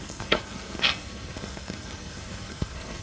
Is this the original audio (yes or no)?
no